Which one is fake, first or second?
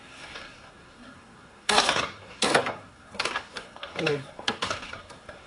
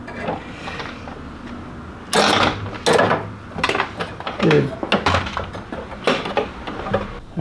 first